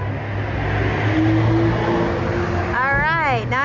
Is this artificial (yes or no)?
no